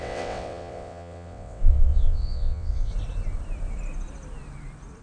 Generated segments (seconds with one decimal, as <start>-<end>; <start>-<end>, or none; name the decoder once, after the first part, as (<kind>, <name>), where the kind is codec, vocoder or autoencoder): 0.0-2.9 (vocoder, WaveNeXt)